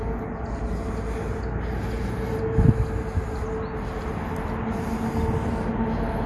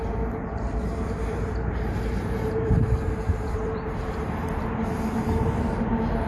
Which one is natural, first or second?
first